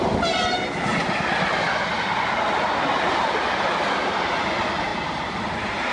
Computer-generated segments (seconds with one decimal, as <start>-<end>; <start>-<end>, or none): none